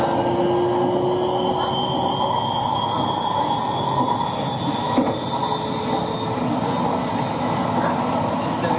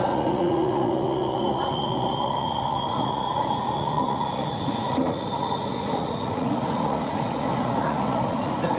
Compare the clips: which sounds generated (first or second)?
second